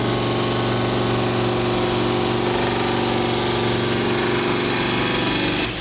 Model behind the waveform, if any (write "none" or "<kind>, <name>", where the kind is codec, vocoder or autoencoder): none